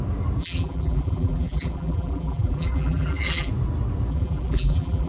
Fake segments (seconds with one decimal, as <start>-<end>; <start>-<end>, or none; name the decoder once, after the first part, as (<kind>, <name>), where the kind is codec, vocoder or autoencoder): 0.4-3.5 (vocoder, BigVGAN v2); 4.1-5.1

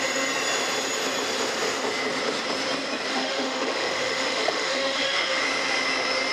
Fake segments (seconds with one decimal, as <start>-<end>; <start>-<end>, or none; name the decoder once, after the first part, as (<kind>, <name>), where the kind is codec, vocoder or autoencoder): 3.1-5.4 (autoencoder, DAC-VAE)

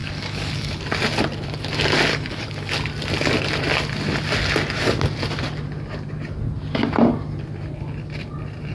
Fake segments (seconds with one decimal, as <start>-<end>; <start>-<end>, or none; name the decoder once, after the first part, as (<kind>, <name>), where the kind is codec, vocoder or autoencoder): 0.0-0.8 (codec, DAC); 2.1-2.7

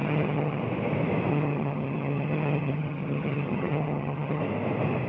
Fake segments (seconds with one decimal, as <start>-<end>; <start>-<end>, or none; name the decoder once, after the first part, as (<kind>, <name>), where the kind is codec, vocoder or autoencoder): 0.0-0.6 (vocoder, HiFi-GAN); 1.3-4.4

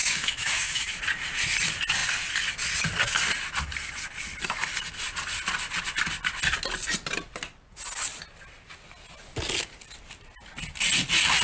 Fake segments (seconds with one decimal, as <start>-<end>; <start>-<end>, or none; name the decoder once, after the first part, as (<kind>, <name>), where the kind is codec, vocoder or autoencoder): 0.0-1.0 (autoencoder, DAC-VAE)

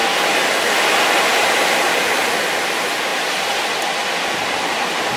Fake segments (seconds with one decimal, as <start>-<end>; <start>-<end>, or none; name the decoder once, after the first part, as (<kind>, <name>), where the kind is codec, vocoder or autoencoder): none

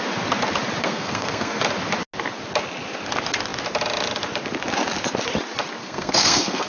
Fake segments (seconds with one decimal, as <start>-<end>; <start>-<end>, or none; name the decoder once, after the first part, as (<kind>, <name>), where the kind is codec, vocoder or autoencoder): 0.8-1.6 (codec, SNAC); 5.8-6.7

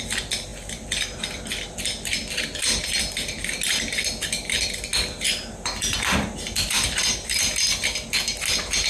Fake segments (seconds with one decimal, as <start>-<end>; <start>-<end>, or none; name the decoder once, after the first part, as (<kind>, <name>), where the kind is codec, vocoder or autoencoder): none